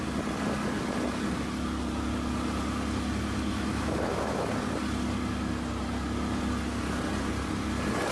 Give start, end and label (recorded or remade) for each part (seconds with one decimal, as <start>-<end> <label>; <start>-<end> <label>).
0.0-3.5 recorded; 3.5-4.5 remade; 4.5-8.1 recorded